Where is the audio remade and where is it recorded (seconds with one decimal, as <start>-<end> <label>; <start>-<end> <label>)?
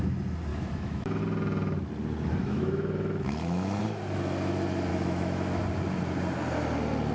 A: 0.0-0.5 recorded; 0.5-1.2 remade; 1.2-2.4 recorded; 2.4-3.8 remade; 3.8-4.9 recorded; 4.9-5.6 remade; 5.6-7.1 recorded